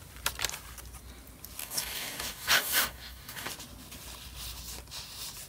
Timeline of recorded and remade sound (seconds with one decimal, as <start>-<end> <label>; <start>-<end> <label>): 0.0-1.6 recorded; 1.6-3.5 remade; 3.5-5.5 recorded